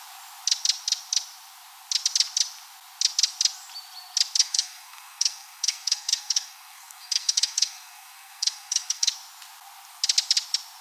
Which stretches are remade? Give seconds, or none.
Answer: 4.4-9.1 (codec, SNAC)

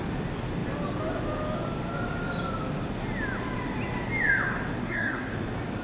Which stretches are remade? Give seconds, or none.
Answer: 4.8-5.3 (codec, SNAC)

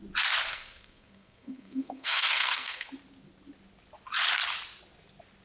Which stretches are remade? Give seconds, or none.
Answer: 0.5-2.9 (codec, SNAC)

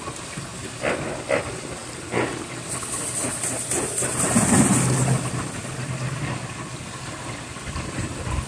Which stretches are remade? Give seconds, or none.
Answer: none

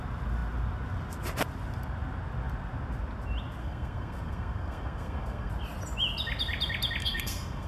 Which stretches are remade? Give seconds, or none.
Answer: 3.6-5.5 (codec, SNAC); 7.0-7.7

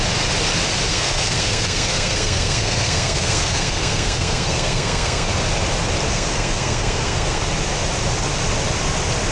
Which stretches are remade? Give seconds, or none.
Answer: 0.9-5.3 (codec, SNAC); 6.1-7.4